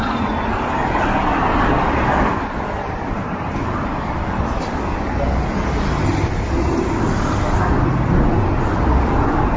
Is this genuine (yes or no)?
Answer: yes